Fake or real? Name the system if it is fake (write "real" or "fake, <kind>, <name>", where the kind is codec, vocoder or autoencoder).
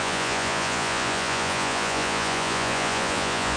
fake, vocoder, Vocos